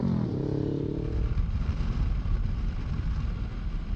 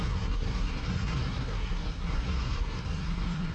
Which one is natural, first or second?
first